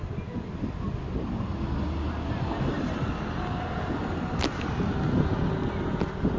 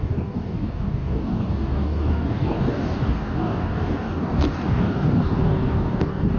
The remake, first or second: second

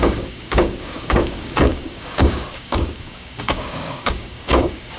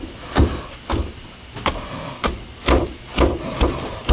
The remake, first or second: first